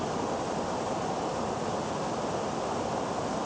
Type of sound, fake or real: real